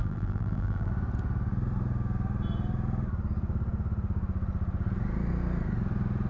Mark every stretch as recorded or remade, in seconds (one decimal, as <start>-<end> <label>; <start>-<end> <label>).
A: 0.0-0.9 remade; 0.9-6.3 recorded

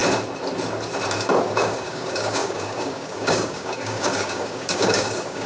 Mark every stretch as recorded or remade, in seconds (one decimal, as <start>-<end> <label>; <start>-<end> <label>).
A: 0.0-1.4 recorded; 1.4-5.5 remade

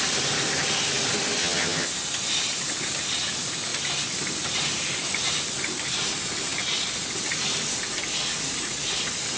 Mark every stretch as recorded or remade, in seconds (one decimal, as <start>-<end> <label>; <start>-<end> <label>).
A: 0.0-1.4 recorded; 1.4-1.9 remade; 1.9-9.4 recorded

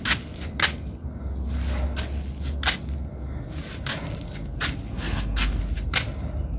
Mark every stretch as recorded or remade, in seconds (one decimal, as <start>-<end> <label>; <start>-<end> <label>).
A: 0.0-4.9 recorded; 4.9-5.6 remade; 5.6-6.6 recorded

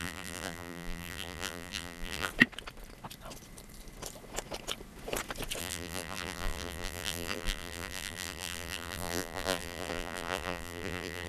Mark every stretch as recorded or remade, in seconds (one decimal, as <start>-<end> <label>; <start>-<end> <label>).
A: 0.0-2.3 remade; 2.3-5.6 recorded; 5.6-11.3 remade

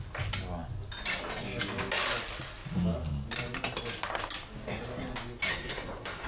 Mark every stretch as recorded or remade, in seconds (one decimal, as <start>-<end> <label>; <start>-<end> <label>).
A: 0.0-5.5 recorded; 5.5-6.3 remade